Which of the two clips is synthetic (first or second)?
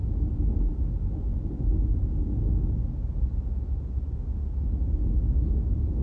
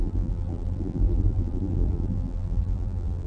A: second